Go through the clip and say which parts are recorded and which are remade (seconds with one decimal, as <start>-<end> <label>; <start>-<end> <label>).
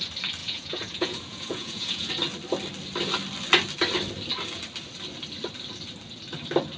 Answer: 0.0-0.4 recorded; 0.4-2.1 remade; 2.1-6.8 recorded